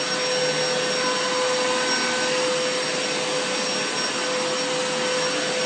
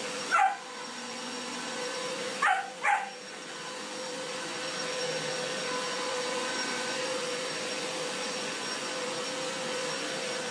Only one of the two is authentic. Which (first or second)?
first